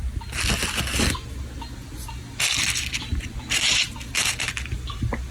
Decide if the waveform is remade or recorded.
recorded